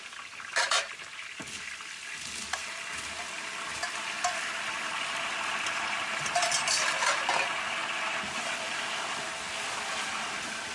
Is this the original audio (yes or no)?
yes